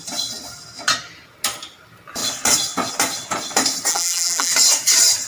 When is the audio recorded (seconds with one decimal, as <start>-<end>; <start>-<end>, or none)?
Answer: 0.0-3.9; 4.5-5.3